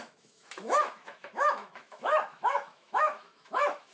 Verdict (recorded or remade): remade